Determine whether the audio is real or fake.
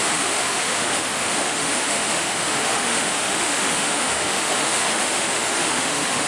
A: fake